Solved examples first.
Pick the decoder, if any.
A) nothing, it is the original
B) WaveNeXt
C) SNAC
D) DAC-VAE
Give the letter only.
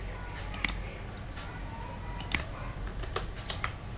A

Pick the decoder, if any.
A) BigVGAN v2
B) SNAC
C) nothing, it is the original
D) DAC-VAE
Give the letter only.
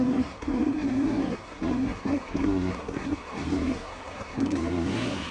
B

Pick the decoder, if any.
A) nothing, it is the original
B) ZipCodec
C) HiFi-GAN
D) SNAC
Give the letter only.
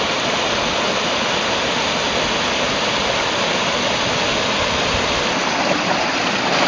A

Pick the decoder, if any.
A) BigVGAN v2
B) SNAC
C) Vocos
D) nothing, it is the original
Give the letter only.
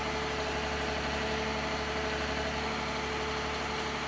D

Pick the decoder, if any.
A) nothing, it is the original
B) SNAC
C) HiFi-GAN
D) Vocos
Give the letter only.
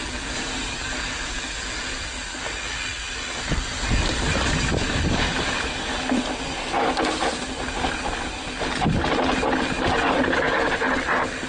A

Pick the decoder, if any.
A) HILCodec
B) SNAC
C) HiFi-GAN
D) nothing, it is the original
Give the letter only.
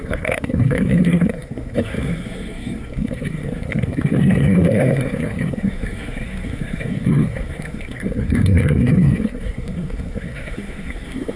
B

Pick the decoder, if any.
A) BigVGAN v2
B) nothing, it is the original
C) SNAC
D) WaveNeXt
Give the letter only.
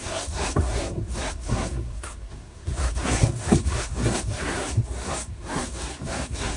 C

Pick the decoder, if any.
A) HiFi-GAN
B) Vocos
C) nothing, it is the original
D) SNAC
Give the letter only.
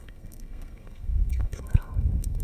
D